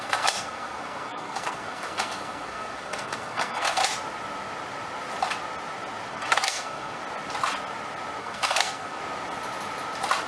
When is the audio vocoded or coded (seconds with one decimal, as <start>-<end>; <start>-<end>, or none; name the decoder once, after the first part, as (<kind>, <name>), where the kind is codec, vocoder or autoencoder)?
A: 0.0-3.8 (codec, SNAC); 6.1-7.0; 8.2-9.0